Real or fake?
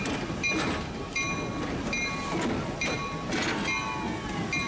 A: real